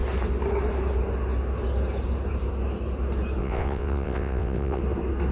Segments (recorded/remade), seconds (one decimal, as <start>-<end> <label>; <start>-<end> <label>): 0.0-3.4 recorded; 3.4-4.8 remade; 4.8-5.3 recorded